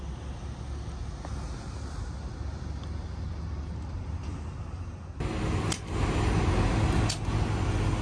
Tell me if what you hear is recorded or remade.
recorded